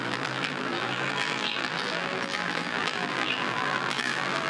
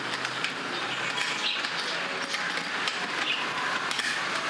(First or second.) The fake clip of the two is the first